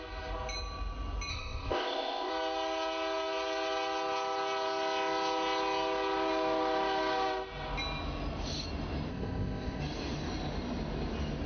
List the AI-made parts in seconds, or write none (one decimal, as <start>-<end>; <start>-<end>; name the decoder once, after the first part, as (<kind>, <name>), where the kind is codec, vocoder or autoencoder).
1.3-2.3 (codec, ZipCodec); 9.1-9.8